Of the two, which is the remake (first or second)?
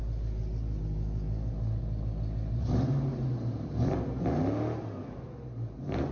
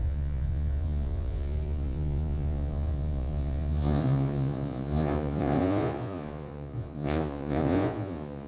second